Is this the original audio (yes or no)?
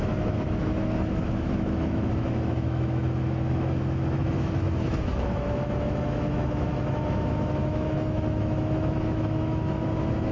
no